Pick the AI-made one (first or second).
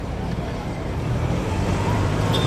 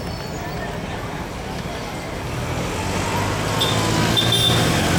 first